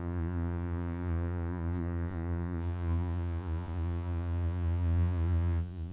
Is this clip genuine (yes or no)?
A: no